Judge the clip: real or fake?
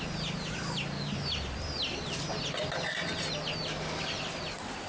real